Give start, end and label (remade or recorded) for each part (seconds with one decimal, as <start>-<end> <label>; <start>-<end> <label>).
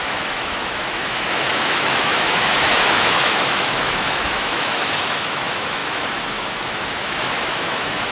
0.0-8.1 remade